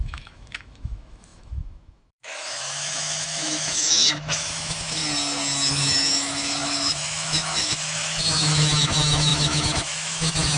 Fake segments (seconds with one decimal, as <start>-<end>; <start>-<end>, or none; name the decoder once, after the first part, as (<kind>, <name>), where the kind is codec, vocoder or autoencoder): 0.0-5.0 (autoencoder, DAC-VAE); 5.7-10.6